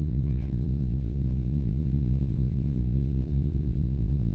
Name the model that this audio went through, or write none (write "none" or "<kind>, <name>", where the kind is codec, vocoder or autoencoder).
vocoder, Vocos